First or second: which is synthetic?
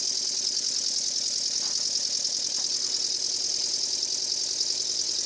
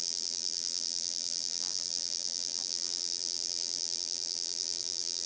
second